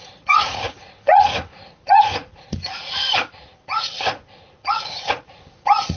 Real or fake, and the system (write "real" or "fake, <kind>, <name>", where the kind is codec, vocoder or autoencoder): fake, vocoder, Vocos